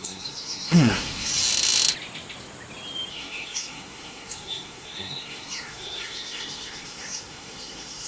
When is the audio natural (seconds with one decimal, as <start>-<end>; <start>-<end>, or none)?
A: 1.3-3.1